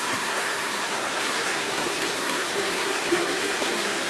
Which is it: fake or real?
fake